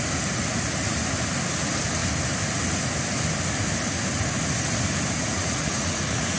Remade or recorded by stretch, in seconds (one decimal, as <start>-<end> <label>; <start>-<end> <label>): 0.0-5.2 recorded; 5.2-6.4 remade